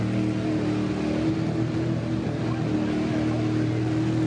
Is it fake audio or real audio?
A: real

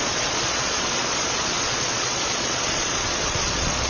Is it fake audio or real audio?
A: fake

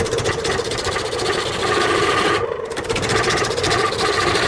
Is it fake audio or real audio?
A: real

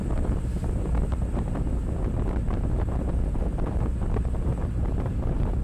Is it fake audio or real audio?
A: fake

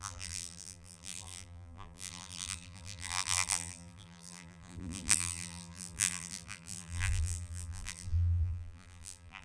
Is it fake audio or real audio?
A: fake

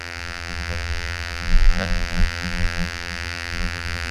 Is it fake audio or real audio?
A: fake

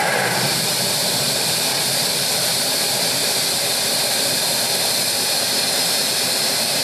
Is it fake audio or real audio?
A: fake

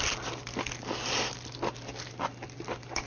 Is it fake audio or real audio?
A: real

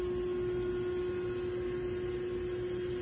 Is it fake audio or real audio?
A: real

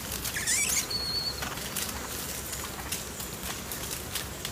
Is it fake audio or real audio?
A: real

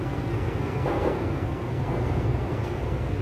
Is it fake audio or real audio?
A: fake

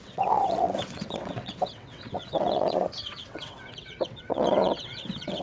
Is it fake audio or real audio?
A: fake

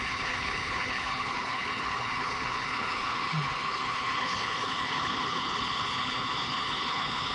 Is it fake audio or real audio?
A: fake